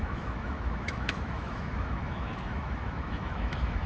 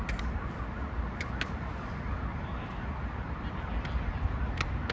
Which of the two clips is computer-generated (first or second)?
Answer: first